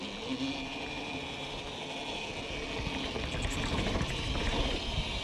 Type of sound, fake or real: real